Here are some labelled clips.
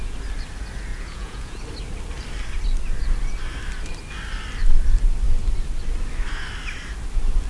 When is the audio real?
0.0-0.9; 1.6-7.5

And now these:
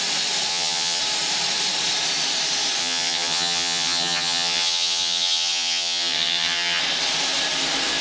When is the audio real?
0.0-0.5; 1.0-2.8; 6.8-8.0

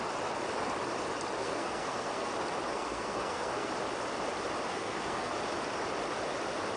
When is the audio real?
0.0-1.4; 2.3-2.7; 3.7-4.7; 5.3-6.8

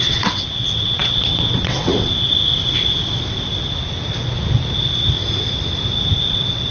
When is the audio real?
2.3-6.3

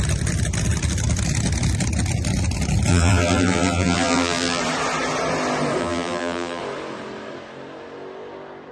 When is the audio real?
0.0-2.9; 4.6-5.8; 6.6-8.7

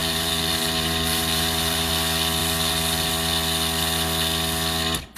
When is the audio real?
1.9-2.4; 3.1-5.2

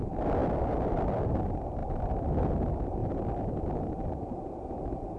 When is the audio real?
0.0-5.2

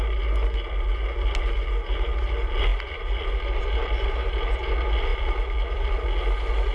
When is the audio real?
0.0-6.7